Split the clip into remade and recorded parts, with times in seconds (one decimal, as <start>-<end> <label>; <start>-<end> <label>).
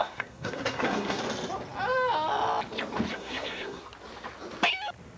0.0-1.2 remade; 1.2-3.1 recorded; 3.1-3.8 remade; 3.8-5.2 recorded